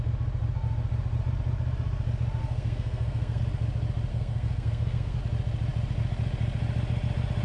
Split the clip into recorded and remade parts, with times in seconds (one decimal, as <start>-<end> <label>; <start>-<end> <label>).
0.0-2.4 recorded; 2.4-3.4 remade; 3.4-4.1 recorded; 4.1-5.2 remade; 5.2-7.4 recorded